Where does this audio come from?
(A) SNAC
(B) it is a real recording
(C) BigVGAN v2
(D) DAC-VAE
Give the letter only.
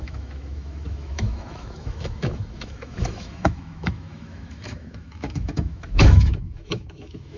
D